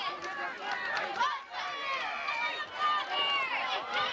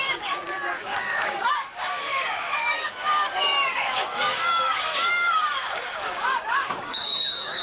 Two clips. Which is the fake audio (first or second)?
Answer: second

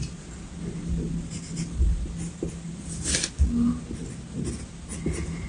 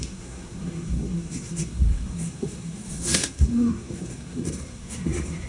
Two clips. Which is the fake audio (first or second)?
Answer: second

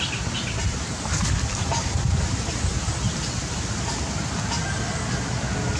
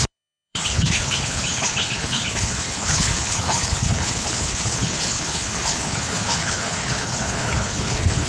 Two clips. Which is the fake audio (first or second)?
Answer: second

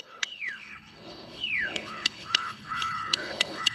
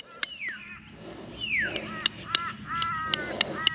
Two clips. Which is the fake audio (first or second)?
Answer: first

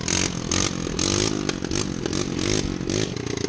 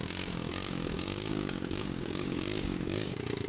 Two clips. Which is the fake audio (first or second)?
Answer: second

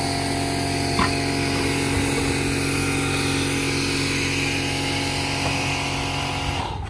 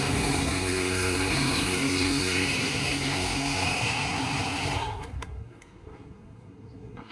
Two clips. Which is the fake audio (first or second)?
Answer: second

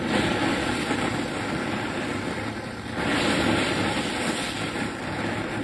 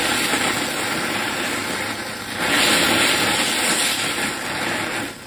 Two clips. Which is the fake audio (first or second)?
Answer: first